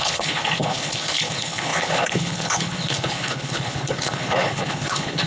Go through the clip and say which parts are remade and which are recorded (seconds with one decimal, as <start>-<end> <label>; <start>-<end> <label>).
0.0-5.3 remade